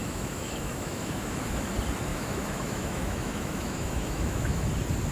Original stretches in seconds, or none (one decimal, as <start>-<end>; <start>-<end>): 1.7-2.1; 4.6-5.1